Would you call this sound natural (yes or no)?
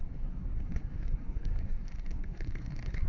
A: no